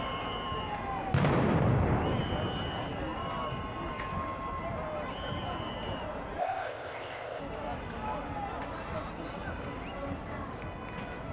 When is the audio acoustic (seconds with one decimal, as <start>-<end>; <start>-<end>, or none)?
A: 0.0-6.4; 7.4-11.3